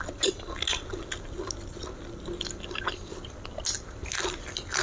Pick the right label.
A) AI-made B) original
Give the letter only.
B